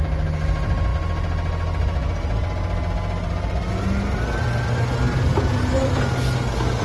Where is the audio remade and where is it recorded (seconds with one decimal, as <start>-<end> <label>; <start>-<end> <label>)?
0.0-6.8 recorded